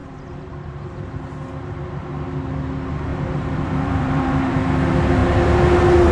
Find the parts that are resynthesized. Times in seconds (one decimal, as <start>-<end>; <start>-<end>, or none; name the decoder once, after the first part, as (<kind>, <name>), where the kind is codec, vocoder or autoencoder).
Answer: 0.0-2.0 (vocoder, BigVGAN v2); 3.1-4.6